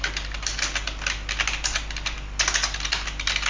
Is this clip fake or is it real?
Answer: real